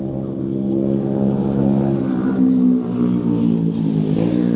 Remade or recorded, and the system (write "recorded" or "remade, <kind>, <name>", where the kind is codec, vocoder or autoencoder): recorded